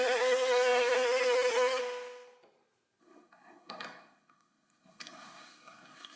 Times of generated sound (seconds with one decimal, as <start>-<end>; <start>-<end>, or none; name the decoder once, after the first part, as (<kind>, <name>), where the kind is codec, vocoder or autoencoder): 0.0-1.8 (codec, SNAC); 3.0-6.2